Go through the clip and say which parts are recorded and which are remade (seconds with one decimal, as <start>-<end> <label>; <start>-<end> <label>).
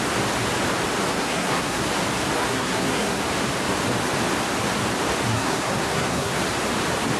0.0-1.1 recorded; 1.1-1.8 remade; 1.8-2.4 recorded; 2.4-3.2 remade; 3.2-5.3 recorded; 5.3-6.4 remade; 6.4-7.2 recorded